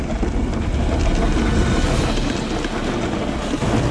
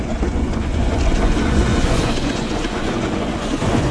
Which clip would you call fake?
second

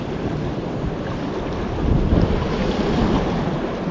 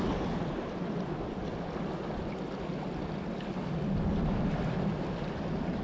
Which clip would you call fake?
first